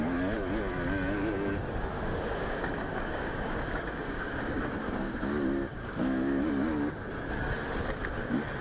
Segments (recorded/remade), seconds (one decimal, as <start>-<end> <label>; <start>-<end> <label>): 0.0-1.9 recorded; 1.9-5.3 remade; 5.3-5.7 recorded; 5.7-6.5 remade; 6.5-8.6 recorded